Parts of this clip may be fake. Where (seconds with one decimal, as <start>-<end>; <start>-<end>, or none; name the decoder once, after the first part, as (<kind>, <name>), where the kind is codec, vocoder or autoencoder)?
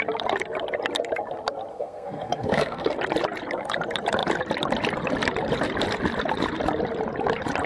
1.7-3.0 (codec, SNAC)